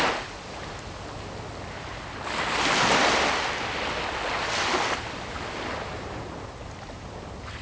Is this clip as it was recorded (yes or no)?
yes